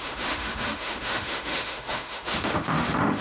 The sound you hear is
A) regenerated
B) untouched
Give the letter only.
A